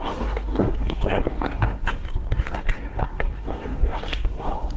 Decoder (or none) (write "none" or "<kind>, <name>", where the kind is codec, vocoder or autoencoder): codec, SNAC